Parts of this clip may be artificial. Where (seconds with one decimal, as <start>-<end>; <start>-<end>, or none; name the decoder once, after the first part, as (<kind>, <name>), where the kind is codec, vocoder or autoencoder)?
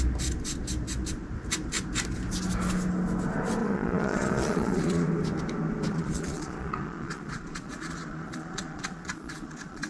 3.6-5.1 (vocoder, Vocos); 5.9-9.9